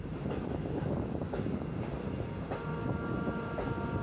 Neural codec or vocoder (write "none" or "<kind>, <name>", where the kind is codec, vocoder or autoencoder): none